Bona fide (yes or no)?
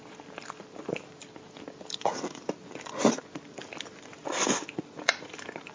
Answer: yes